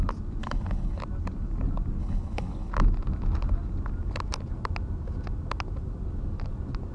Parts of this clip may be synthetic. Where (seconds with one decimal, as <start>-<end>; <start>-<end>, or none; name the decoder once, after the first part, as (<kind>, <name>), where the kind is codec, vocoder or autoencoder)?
0.4-1.0 (codec, HILCodec); 2.0-2.7